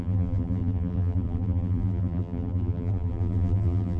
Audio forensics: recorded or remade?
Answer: remade